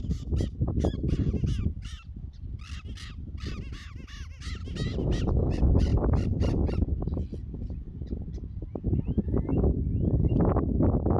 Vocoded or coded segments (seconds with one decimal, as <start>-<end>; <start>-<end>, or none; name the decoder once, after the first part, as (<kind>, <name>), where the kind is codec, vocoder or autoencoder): 5.9-6.6 (vocoder, BigVGAN v2)